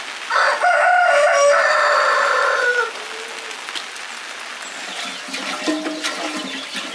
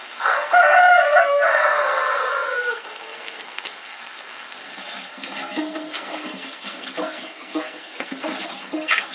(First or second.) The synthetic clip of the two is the second